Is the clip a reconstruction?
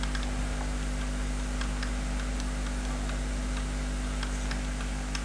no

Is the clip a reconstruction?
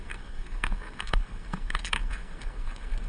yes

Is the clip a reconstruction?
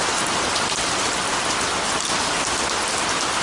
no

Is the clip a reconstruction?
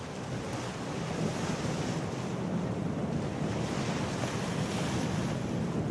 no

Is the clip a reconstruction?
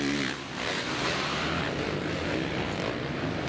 no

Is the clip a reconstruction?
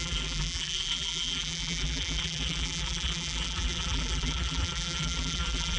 yes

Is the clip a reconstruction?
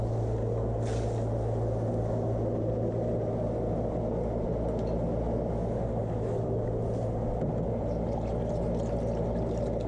no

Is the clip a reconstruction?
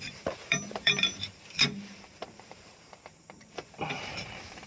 yes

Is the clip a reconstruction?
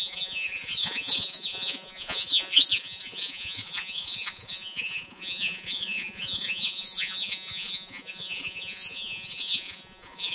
yes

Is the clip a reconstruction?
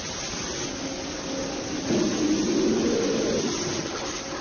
no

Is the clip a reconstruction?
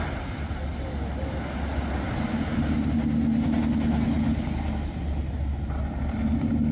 no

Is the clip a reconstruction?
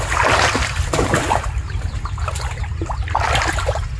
no